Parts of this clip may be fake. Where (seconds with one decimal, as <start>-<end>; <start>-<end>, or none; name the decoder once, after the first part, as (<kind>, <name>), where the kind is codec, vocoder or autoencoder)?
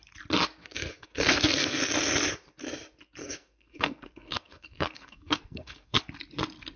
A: 0.6-1.9 (codec, SNAC); 3.2-6.0